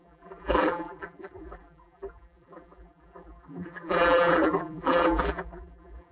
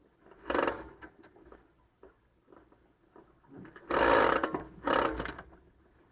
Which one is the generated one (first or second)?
first